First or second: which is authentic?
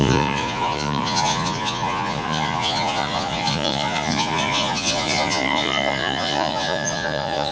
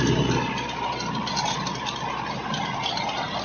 second